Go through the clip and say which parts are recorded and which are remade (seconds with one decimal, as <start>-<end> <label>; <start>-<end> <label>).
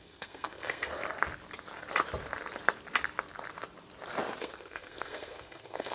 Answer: 0.0-0.9 remade; 0.9-4.4 recorded; 4.4-5.9 remade